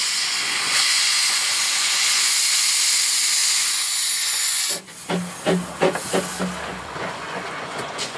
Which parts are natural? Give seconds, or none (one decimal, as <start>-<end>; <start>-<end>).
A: 2.4-3.4; 5.1-6.7